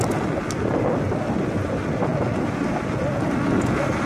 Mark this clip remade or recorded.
recorded